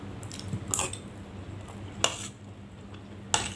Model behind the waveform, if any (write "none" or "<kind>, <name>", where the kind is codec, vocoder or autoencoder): none